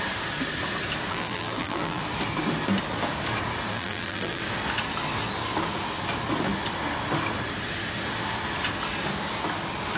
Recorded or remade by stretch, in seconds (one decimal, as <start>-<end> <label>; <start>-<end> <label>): 0.0-1.1 recorded; 1.1-2.0 remade; 2.0-3.7 recorded; 3.7-4.4 remade; 4.4-10.0 recorded